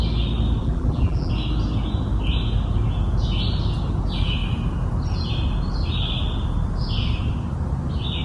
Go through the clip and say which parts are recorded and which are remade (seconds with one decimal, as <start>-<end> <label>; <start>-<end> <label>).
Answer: 0.0-0.6 recorded; 0.6-1.3 remade; 1.3-8.2 recorded